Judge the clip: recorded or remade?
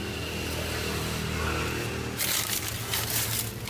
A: recorded